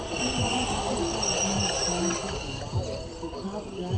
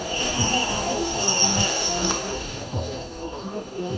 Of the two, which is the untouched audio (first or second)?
first